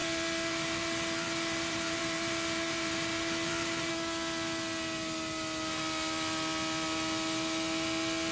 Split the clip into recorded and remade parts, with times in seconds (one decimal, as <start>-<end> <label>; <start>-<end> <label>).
0.0-3.9 remade; 3.9-8.3 recorded